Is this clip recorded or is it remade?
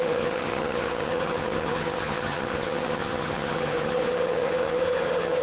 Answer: remade